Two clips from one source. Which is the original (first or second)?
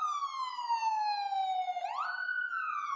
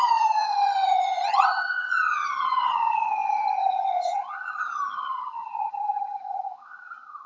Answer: first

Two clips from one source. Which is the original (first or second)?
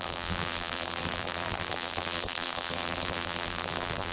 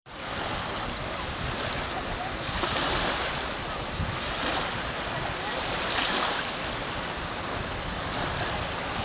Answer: second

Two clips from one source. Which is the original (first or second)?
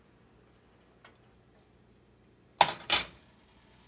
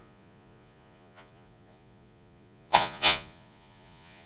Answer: first